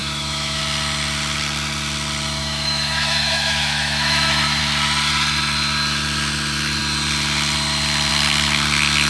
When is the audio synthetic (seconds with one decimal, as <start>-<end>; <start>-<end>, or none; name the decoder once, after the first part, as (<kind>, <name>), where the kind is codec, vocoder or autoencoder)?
0.0-0.6 (autoencoder, DAC-VAE); 2.4-4.6

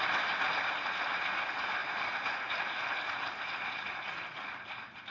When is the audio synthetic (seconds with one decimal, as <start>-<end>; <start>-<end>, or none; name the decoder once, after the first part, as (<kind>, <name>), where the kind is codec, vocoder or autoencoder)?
none

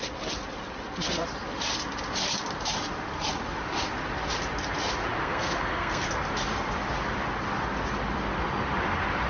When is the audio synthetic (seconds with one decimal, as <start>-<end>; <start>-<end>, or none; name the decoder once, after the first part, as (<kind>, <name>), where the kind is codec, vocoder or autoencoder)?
5.2-6.2 (codec, SNAC)

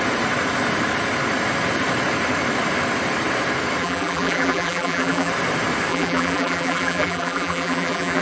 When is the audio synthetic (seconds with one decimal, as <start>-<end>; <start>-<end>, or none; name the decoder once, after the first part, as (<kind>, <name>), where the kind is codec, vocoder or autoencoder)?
3.8-5.3 (vocoder, BigVGAN v2); 5.9-8.2

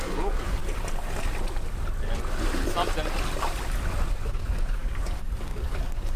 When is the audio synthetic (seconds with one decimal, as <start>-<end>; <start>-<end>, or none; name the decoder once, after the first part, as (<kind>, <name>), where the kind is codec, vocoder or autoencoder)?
0.0-0.6 (codec, DAC); 4.1-6.2

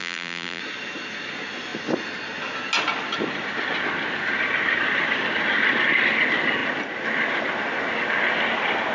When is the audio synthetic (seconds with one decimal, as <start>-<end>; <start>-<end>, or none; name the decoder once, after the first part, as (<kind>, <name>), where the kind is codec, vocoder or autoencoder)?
0.0-0.6 (vocoder, BigVGAN v2)